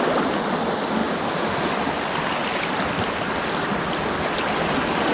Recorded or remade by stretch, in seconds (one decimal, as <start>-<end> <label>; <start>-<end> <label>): 0.0-2.4 recorded; 2.4-3.7 remade; 3.7-5.1 recorded